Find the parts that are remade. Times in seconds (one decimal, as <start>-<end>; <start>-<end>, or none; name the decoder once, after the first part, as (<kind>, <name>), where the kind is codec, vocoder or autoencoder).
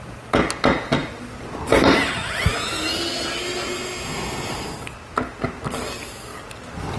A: 1.0-2.1 (vocoder, BigVGAN v2); 6.3-7.0